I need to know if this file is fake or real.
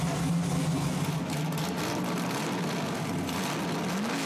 real